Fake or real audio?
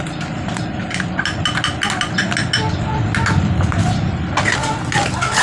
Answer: real